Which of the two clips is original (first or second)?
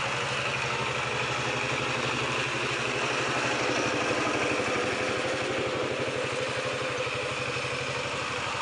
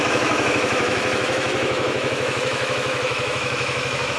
first